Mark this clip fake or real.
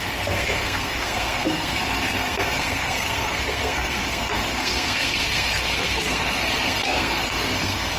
fake